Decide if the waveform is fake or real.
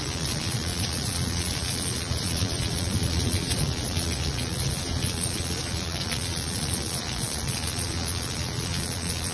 fake